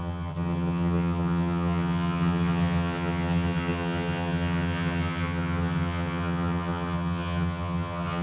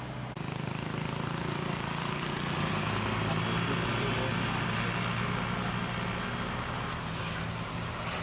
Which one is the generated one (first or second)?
first